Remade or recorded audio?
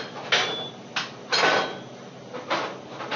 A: recorded